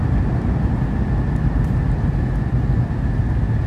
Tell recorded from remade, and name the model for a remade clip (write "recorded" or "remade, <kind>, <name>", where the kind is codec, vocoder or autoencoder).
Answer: recorded